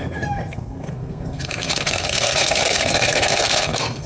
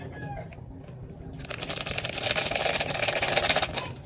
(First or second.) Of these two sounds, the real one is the second